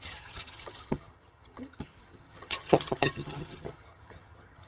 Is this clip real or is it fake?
fake